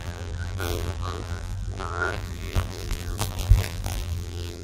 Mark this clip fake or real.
fake